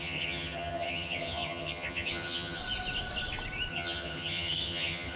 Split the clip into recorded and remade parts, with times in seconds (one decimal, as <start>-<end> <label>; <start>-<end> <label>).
0.0-2.6 remade; 2.6-3.7 recorded; 3.7-5.2 remade